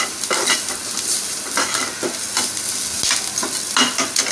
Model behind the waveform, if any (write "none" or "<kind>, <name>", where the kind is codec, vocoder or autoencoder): none